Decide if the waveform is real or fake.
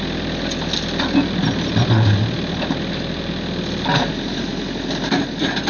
real